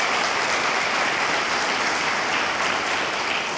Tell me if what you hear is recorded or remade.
recorded